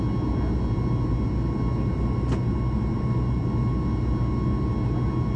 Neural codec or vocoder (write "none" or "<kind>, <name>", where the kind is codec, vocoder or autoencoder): none